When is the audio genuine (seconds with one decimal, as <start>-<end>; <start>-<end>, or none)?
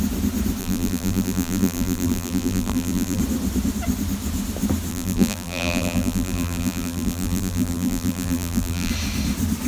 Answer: 0.0-0.6; 3.2-4.9; 8.9-9.7